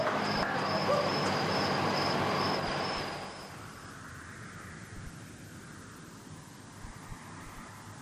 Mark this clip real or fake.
fake